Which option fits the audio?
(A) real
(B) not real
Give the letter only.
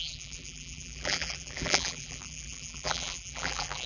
B